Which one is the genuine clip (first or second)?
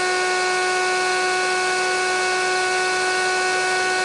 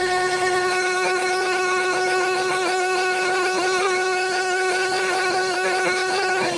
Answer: first